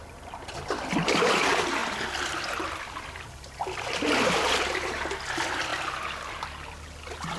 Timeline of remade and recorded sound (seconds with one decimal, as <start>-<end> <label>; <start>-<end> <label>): 0.0-1.8 recorded; 1.8-5.2 remade; 5.2-7.4 recorded